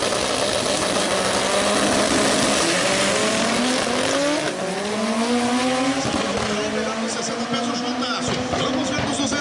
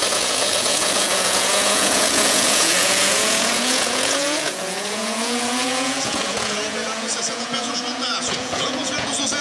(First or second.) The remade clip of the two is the second